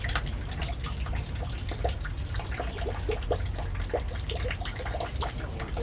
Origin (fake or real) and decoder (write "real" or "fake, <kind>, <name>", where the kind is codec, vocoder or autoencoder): real